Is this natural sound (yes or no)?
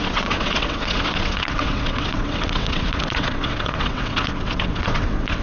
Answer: no